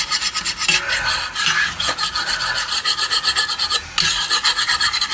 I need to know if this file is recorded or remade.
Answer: recorded